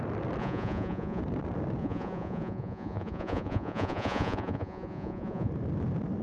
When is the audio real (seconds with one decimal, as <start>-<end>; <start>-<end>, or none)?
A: 0.0-0.4; 1.2-1.8; 5.5-6.2